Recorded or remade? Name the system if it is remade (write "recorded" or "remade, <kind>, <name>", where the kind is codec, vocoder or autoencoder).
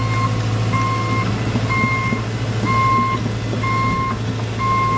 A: recorded